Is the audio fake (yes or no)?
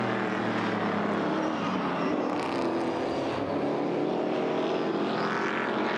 yes